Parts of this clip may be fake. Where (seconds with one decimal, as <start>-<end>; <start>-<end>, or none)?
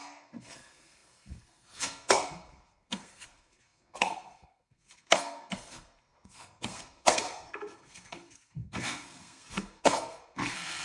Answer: 0.0-10.8